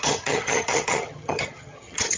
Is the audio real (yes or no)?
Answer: no